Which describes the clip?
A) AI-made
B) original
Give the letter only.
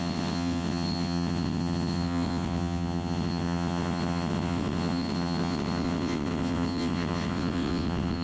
A